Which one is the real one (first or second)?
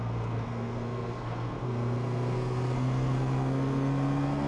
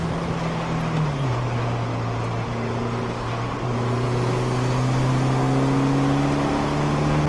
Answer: second